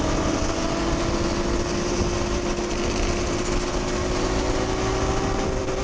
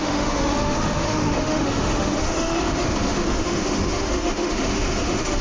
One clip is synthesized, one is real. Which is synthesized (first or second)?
second